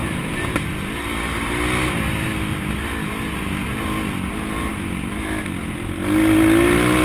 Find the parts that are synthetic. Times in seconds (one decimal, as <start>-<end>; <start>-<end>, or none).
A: 0.0-1.5